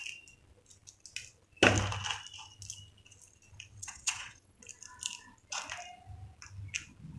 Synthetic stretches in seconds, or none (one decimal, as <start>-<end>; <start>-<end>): 3.7-4.6